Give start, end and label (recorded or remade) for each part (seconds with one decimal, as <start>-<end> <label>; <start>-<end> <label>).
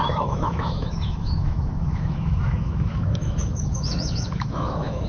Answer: 0.0-5.1 remade